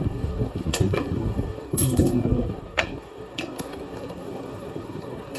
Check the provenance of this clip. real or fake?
fake